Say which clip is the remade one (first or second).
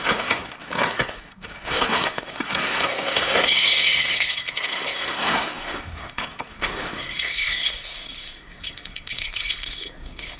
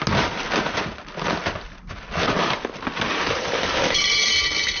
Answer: first